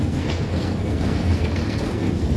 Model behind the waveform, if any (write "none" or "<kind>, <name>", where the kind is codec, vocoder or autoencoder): codec, SNAC